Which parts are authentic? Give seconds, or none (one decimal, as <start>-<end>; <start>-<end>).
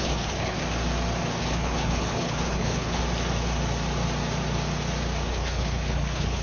0.6-1.4; 3.0-5.3